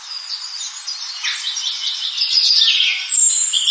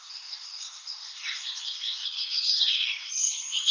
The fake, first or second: second